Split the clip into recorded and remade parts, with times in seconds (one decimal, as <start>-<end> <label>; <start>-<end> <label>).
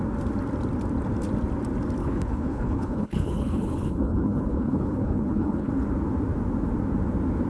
0.0-2.0 recorded; 2.0-5.7 remade; 5.7-7.5 recorded